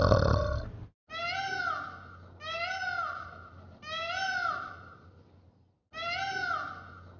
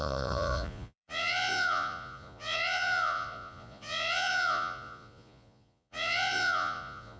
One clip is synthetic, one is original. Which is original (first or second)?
first